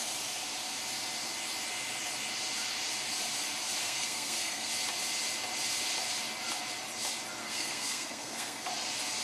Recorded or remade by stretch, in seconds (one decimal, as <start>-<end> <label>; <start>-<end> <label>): 0.0-3.8 recorded; 3.8-4.7 remade; 4.7-7.4 recorded; 7.4-8.7 remade; 8.7-9.2 recorded